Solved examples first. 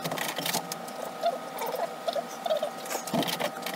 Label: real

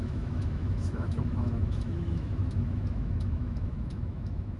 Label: fake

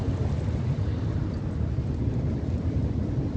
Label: real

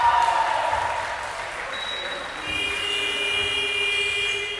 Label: real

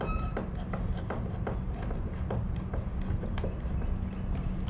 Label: real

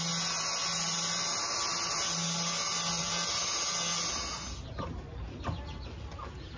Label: real